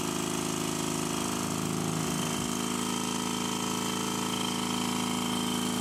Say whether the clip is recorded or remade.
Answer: recorded